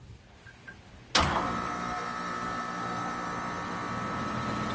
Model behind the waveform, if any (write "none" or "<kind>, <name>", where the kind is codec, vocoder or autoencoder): none